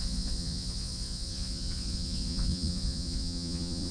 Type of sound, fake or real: fake